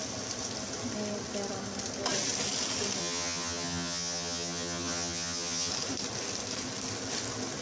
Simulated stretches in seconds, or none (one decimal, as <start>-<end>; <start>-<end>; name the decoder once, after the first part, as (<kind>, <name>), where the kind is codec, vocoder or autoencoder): 3.0-5.7 (vocoder, HiFi-GAN)